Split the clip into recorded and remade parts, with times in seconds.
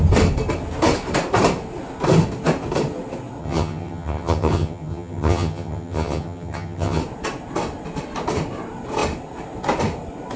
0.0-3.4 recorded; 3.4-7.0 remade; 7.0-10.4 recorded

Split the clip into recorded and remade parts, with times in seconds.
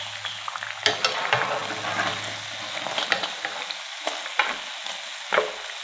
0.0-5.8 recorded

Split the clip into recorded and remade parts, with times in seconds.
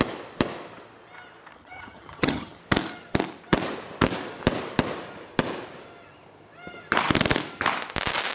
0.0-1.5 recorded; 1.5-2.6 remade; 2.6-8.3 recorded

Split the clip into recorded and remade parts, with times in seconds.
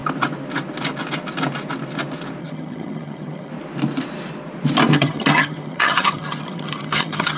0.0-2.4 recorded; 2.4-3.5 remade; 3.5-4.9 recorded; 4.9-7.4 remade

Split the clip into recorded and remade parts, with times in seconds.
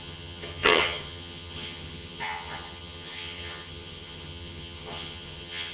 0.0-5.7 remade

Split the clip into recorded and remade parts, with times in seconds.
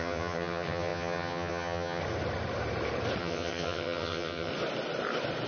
0.0-2.0 remade; 2.0-3.2 recorded; 3.2-4.5 remade; 4.5-5.5 recorded